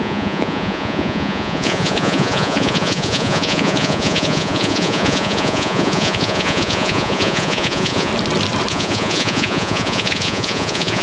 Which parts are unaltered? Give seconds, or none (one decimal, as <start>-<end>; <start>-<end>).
8.1-8.7